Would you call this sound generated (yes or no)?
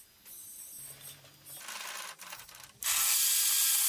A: no